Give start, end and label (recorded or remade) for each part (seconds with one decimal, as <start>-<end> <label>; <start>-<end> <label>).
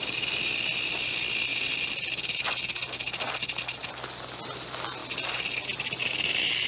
0.0-6.7 recorded